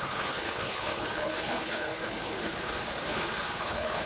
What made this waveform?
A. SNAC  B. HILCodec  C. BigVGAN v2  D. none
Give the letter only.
B